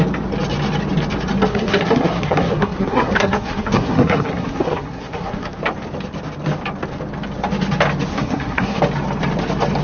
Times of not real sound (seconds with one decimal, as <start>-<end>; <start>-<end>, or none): 1.5-5.6; 8.1-8.8